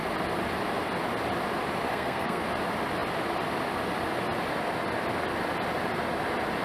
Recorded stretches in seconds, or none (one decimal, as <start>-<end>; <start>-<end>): 0.0-1.9; 2.4-6.6